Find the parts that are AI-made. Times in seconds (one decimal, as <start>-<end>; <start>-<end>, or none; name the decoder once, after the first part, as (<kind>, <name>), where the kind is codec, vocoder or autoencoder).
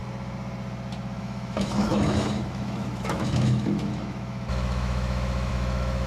1.2-6.1 (autoencoder, DAC-VAE)